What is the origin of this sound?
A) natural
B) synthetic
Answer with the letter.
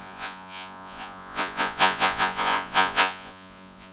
B